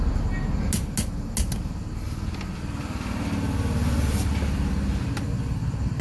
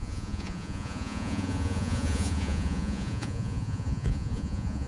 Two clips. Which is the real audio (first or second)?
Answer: first